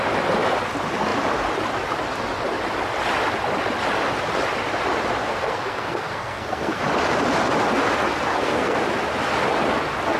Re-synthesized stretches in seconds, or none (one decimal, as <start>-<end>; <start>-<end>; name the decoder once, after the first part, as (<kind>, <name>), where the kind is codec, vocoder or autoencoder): 5.2-6.8 (codec, SNAC); 8.3-8.8